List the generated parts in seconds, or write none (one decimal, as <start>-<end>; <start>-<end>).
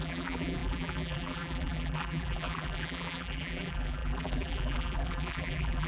0.0-5.9